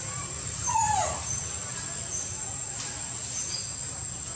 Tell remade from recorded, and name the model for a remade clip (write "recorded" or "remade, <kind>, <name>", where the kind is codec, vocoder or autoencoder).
recorded